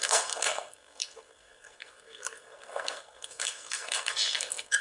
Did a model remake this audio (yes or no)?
yes